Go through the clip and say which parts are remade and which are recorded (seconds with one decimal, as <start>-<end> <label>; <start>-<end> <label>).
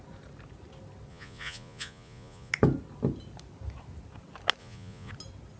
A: 0.0-1.1 recorded; 1.1-2.5 remade; 2.5-4.6 recorded; 4.6-5.1 remade; 5.1-5.6 recorded